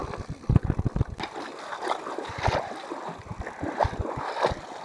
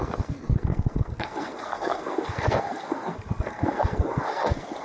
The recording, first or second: first